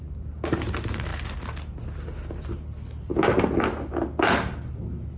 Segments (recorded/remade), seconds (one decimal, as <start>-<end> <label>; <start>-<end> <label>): 0.0-5.2 recorded